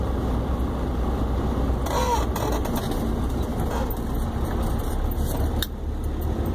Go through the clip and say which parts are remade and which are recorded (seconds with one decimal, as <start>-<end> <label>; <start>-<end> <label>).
0.0-6.5 recorded